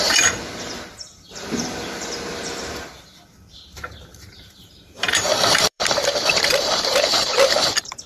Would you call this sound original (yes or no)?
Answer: no